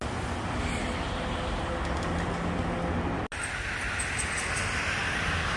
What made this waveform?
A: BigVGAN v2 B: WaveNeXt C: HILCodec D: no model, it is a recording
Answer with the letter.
D